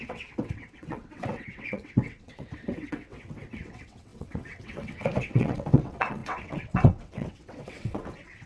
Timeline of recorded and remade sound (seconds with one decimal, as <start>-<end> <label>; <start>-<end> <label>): 0.0-8.5 remade